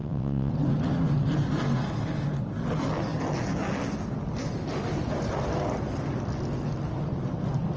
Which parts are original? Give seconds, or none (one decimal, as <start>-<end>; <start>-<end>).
0.5-7.8